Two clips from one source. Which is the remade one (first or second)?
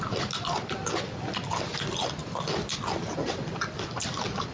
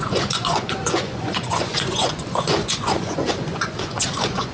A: second